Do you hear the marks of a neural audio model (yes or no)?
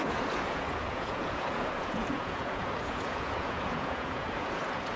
yes